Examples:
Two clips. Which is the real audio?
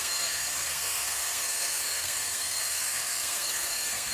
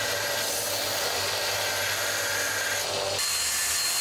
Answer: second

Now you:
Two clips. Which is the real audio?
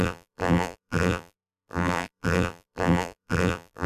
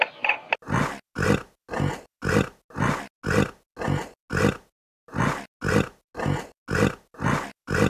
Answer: second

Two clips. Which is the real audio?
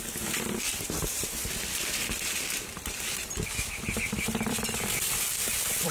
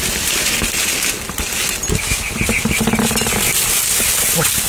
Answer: second